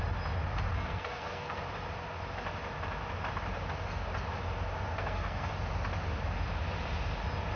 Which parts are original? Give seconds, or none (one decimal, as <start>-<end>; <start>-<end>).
0.0-0.7; 1.6-4.9; 5.5-7.6